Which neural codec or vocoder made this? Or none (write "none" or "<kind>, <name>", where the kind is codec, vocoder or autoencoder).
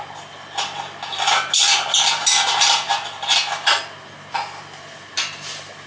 none